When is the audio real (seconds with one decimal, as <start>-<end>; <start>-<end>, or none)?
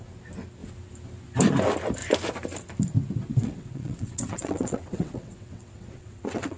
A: 0.0-3.3